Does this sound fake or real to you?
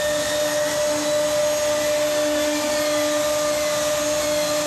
real